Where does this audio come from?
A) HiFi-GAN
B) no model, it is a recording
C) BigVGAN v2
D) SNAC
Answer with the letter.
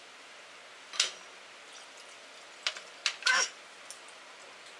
B